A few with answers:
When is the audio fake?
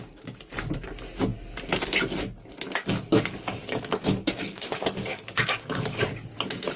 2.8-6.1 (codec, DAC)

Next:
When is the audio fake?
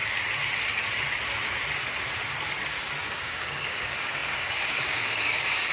3.0-5.7 (codec, DAC)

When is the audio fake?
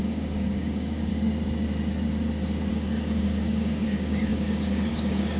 0.0-1.1 (codec, DAC); 2.7-5.4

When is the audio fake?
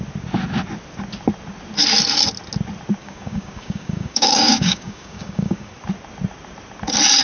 3.0-5.7 (codec, DAC)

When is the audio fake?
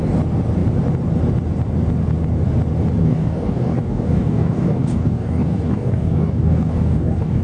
3.0-7.4 (codec, DAC)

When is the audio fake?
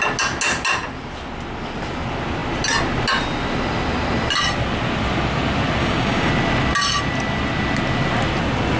5.8-6.3 (codec, DAC)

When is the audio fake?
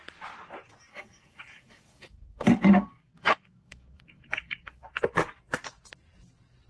0.9-4.9 (codec, DAC)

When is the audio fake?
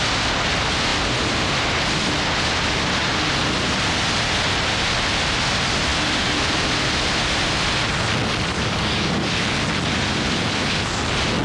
8.5-9.3 (codec, DAC)